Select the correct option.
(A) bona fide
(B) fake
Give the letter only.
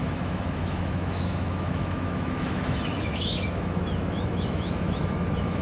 B